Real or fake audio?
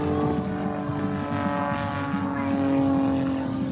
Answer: real